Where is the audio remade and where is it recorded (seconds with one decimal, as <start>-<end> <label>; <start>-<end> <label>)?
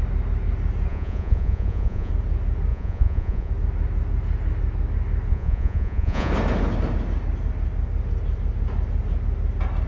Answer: 0.0-0.9 recorded; 0.9-2.1 remade; 2.1-2.7 recorded; 2.7-3.5 remade; 3.5-5.3 recorded; 5.3-6.3 remade; 6.3-9.9 recorded